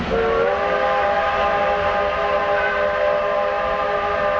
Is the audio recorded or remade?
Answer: recorded